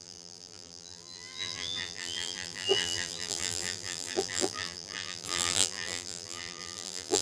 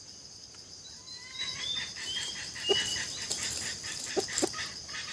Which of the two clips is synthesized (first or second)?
first